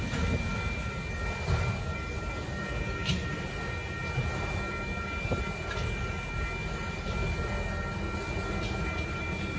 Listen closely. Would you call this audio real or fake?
real